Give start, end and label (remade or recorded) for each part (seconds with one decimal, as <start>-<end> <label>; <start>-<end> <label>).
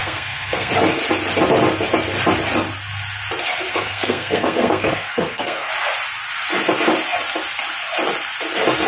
0.0-0.7 remade; 0.7-3.7 recorded; 3.7-5.7 remade; 5.7-8.9 recorded